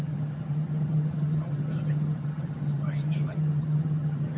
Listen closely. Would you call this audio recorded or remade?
remade